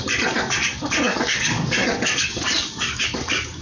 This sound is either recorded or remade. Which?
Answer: remade